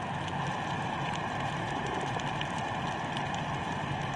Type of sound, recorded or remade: recorded